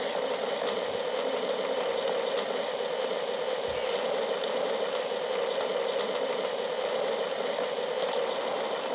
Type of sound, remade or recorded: recorded